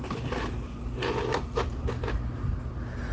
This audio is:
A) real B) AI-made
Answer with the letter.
A